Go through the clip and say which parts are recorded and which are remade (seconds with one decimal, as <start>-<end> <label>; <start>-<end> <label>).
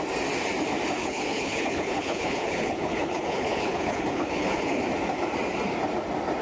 0.0-1.0 recorded; 1.0-4.8 remade; 4.8-6.4 recorded